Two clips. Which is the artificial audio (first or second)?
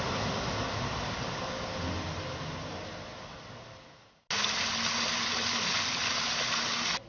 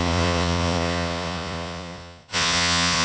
second